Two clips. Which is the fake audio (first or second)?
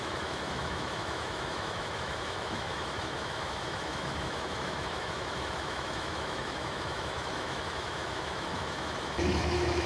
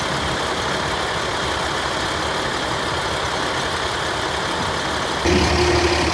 first